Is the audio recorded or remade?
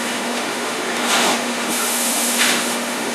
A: remade